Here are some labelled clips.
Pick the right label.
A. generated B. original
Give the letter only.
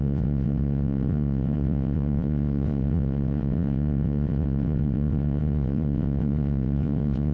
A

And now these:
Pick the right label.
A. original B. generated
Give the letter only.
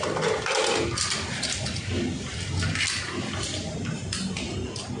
A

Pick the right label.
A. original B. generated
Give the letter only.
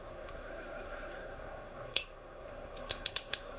B